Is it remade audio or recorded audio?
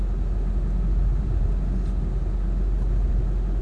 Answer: recorded